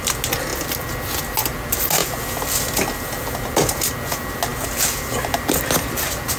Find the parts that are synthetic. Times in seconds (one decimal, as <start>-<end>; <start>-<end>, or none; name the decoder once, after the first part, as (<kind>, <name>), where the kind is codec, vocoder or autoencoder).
none